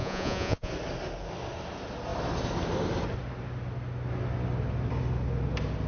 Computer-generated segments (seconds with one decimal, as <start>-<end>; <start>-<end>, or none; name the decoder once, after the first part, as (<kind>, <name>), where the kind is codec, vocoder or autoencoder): 0.0-0.7 (vocoder, Vocos)